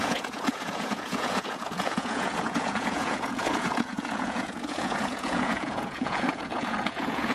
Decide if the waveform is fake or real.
fake